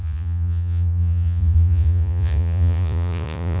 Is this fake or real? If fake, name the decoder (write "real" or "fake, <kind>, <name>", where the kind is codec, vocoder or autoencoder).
fake, vocoder, Vocos